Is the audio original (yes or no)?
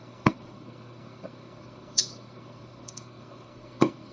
no